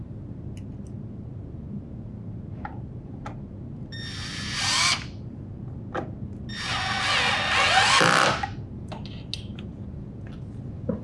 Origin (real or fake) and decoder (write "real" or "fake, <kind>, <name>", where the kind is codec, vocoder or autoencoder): real